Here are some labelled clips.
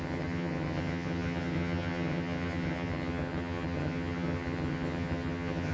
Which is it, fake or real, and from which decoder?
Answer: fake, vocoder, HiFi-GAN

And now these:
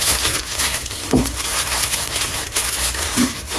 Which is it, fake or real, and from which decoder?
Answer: fake, codec, SNAC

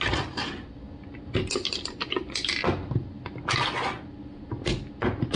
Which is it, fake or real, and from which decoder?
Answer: real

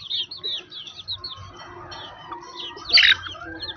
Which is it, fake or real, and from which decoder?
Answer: real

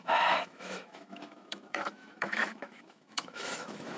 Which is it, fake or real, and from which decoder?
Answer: fake, autoencoder, DAC-VAE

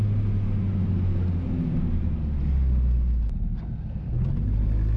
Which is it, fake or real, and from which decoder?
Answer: real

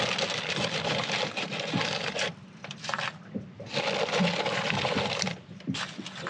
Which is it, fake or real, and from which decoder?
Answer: real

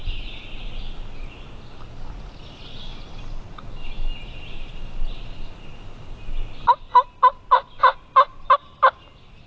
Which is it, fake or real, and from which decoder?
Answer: real